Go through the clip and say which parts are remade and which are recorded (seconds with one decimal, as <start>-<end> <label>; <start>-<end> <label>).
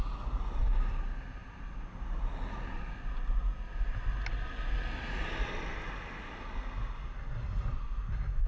0.0-8.5 recorded